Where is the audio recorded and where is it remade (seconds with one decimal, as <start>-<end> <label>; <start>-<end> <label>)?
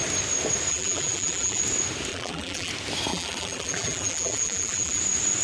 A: 0.0-0.7 recorded; 0.7-1.6 remade; 1.6-2.1 recorded; 2.1-2.7 remade; 2.7-3.1 recorded; 3.1-5.0 remade; 5.0-5.4 recorded